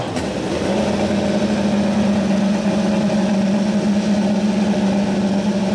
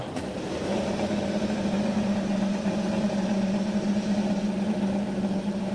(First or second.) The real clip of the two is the first